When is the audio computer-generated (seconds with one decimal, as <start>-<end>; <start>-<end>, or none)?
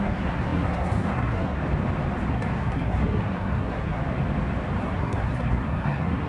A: 0.0-1.6; 2.3-4.0; 4.8-6.3